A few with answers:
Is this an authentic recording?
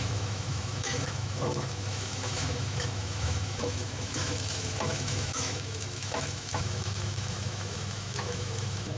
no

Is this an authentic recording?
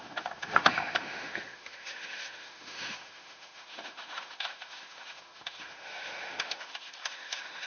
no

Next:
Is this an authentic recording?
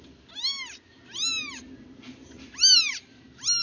yes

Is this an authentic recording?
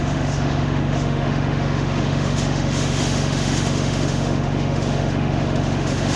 no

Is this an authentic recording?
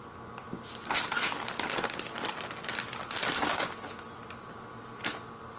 yes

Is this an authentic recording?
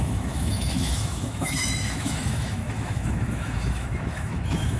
no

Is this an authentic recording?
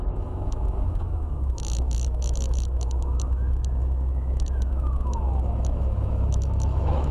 no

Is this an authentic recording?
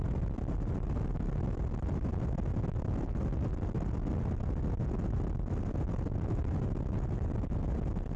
yes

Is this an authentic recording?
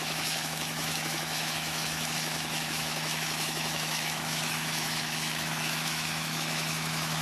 no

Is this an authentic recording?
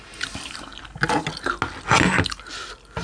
yes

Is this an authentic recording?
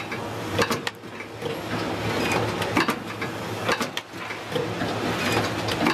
yes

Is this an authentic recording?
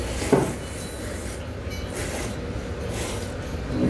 yes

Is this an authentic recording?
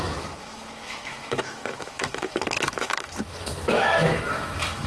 no